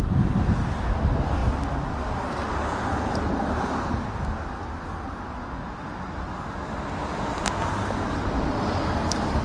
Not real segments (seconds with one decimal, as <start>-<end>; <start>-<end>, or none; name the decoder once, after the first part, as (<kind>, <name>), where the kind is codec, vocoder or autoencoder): none